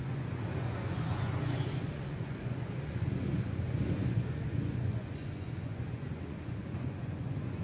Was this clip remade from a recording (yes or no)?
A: yes